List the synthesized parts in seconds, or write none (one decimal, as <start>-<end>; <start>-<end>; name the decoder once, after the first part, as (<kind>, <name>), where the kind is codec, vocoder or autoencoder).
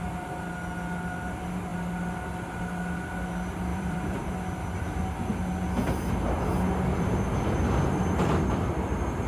3.7-4.3 (vocoder, BigVGAN v2)